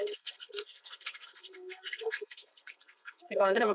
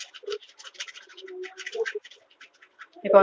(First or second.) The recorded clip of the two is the second